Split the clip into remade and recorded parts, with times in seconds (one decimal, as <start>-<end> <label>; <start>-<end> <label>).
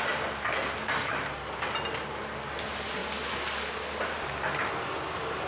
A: 0.0-5.5 recorded